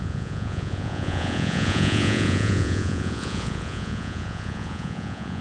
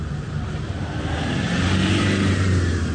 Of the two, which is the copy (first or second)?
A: first